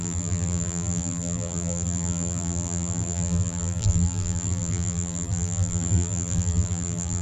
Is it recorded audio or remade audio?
remade